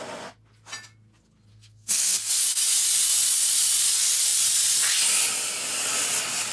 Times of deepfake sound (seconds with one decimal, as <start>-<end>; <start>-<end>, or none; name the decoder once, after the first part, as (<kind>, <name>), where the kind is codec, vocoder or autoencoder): 1.5-2.3 (codec, SNAC)

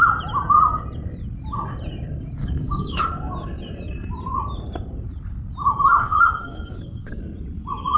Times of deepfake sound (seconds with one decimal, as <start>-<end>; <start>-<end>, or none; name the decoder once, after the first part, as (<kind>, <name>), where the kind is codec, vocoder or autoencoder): 2.4-3.0 (codec, DAC); 5.9-7.2

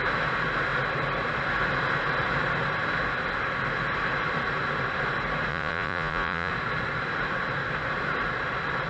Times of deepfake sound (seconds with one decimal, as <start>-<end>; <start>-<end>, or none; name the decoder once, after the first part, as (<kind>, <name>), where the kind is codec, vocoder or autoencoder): 5.5-6.5 (vocoder, Vocos)

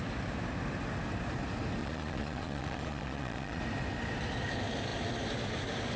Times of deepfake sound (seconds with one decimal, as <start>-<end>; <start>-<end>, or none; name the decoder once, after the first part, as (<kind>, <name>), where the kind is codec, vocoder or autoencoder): 1.8-3.6 (vocoder, Vocos)

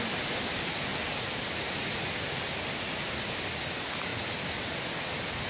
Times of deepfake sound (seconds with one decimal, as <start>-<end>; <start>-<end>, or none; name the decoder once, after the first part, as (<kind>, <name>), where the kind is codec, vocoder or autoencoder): none

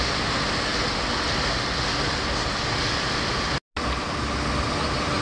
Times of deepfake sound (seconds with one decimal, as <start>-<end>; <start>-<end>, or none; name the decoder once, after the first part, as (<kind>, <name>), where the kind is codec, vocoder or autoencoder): none